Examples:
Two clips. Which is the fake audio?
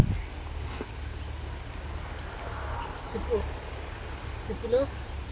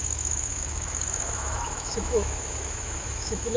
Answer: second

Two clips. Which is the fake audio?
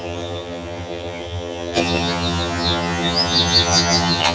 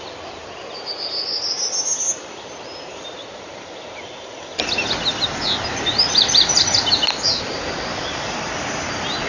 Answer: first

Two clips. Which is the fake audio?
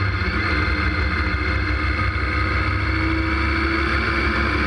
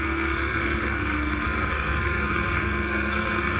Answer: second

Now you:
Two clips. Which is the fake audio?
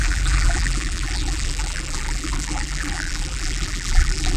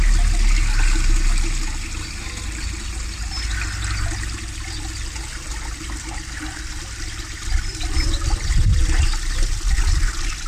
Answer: first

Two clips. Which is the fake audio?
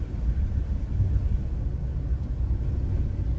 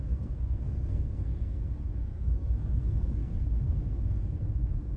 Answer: second